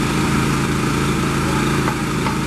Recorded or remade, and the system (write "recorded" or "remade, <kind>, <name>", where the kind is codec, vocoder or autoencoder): remade, vocoder, BigVGAN v2